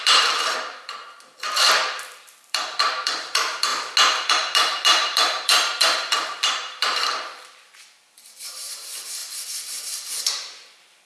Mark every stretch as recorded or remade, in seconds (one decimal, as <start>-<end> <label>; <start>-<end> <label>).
0.0-1.0 remade; 1.0-2.2 recorded; 2.2-3.7 remade; 3.7-4.3 recorded; 4.3-9.2 remade; 9.2-10.1 recorded; 10.1-11.1 remade